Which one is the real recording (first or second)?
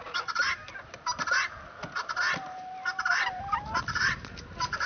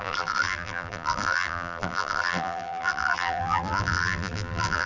first